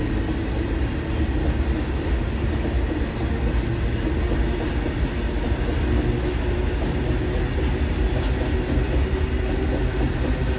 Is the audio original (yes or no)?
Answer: yes